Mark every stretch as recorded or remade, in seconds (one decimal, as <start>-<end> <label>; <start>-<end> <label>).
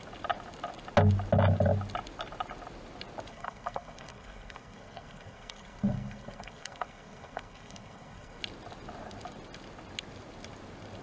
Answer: 0.0-3.3 recorded; 3.3-8.4 remade; 8.4-11.0 recorded